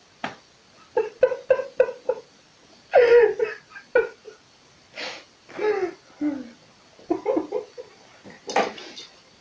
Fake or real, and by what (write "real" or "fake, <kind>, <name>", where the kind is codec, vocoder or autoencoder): real